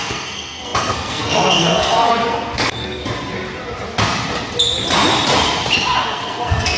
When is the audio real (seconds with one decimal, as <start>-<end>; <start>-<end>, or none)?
3.0-6.0